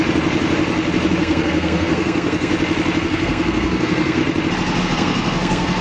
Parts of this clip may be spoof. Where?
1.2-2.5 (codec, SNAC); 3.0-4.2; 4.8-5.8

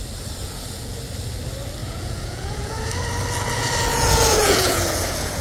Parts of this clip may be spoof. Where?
0.4-1.0 (vocoder, Vocos); 1.8-2.9; 3.9-5.4

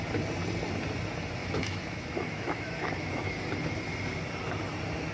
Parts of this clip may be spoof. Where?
1.4-3.3 (autoencoder, DAC-VAE)

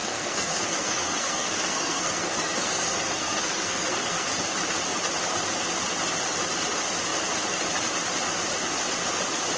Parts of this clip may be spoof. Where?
0.0-4.3 (codec, SNAC)

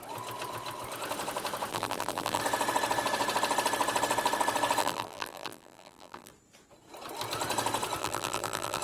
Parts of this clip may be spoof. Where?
1.7-2.4 (vocoder, BigVGAN v2); 4.8-6.3; 8.0-8.8

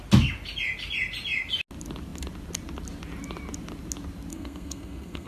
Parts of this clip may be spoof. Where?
4.3-5.3 (codec, SNAC)

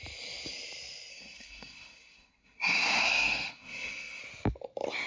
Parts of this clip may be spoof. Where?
1.1-4.2 (codec, SNAC)

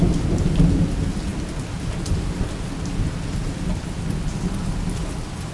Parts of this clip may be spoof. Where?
none